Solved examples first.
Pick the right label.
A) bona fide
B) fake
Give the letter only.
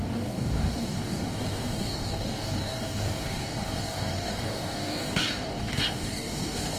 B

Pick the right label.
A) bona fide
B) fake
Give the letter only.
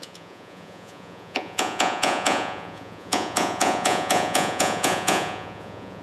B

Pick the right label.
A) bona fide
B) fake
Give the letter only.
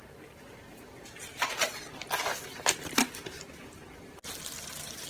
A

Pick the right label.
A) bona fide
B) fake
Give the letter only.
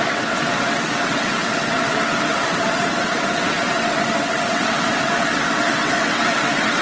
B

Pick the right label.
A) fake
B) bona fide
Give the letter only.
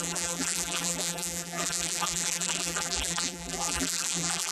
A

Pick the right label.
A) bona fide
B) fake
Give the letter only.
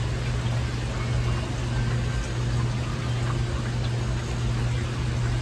A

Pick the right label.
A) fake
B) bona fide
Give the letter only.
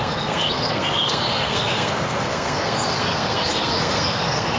A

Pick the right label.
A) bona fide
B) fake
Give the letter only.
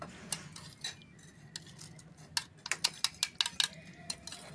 A